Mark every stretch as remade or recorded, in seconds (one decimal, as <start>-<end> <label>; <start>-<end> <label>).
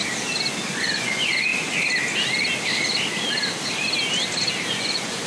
0.0-0.7 recorded; 0.7-1.5 remade; 1.5-4.7 recorded; 4.7-5.3 remade